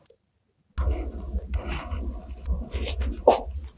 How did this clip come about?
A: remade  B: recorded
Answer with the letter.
B